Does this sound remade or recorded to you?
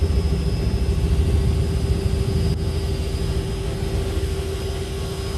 recorded